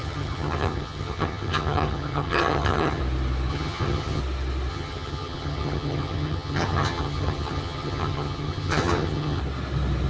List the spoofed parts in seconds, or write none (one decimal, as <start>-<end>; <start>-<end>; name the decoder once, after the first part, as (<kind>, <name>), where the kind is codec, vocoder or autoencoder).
0.0-3.0 (vocoder, HiFi-GAN); 3.5-4.2; 4.7-9.4